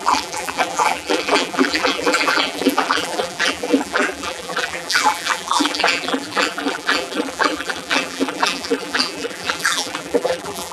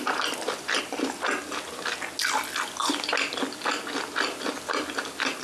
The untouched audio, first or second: second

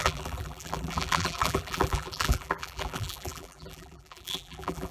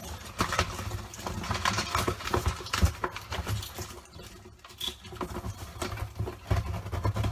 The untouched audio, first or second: second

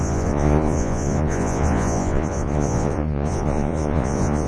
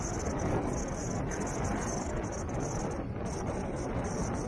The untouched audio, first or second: second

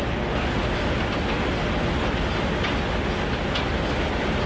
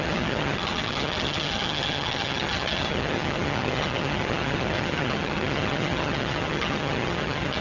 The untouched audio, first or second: first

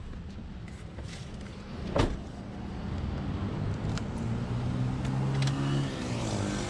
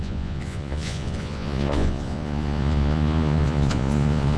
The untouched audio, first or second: first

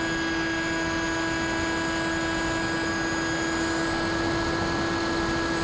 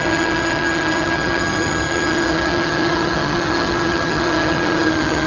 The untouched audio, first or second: first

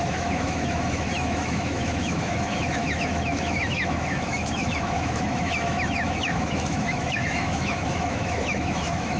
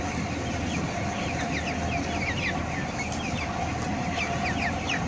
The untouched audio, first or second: second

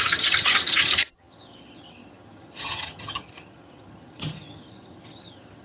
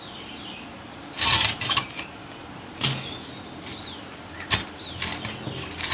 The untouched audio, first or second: second